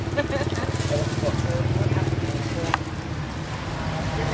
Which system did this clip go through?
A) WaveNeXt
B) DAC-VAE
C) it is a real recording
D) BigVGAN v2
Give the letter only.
C